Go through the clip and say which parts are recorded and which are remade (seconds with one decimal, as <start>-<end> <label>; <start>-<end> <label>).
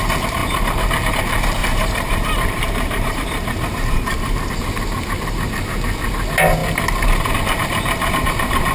0.0-1.6 recorded; 1.6-4.5 remade; 4.5-8.7 recorded